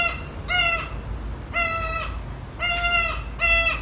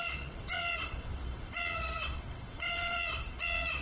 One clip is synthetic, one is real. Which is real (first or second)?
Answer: first